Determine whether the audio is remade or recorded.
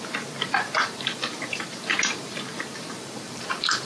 remade